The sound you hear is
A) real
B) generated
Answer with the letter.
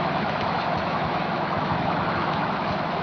B